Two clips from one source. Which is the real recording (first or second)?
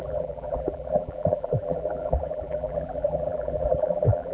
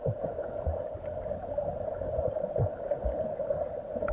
second